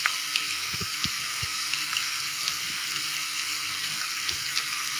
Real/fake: fake